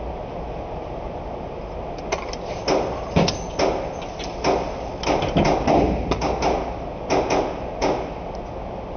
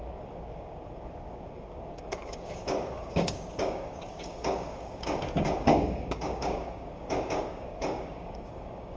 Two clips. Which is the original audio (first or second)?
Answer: first